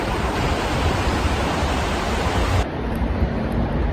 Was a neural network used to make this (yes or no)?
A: yes